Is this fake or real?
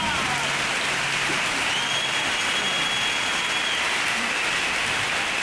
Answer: real